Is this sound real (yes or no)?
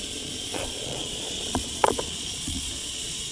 no